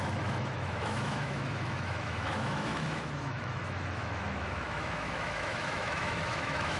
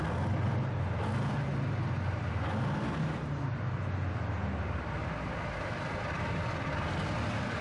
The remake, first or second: first